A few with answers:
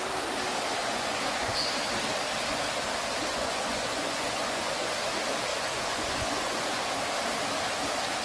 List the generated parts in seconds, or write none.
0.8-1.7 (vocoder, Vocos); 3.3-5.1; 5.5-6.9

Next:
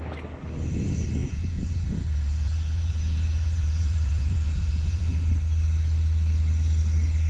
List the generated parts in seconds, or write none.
1.2-5.3 (vocoder, Vocos)

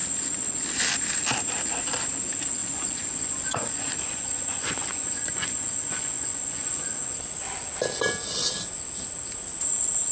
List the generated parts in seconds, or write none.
2.6-6.8 (vocoder, Vocos)

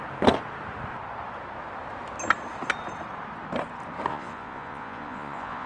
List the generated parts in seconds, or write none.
4.1-5.7 (vocoder, Vocos)

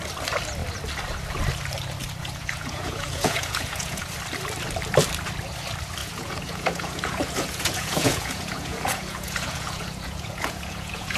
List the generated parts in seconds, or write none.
2.2-4.1 (vocoder, Vocos); 6.0-11.2